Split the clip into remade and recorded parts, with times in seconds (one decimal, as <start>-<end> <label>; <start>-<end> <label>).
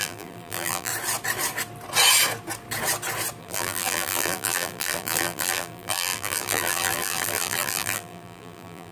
0.0-0.9 remade; 0.9-3.4 recorded; 3.4-8.9 remade